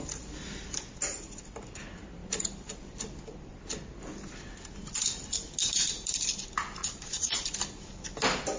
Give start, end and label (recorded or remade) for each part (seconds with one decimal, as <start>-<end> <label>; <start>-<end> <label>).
0.0-6.8 recorded; 6.8-7.4 remade; 7.4-8.6 recorded